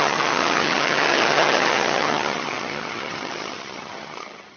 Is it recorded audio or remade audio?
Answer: remade